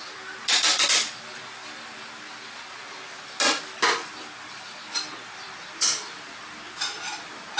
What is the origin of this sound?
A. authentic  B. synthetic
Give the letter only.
A